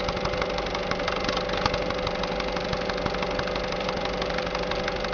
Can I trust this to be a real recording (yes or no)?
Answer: yes